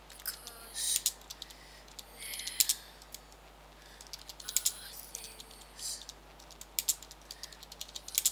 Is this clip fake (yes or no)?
no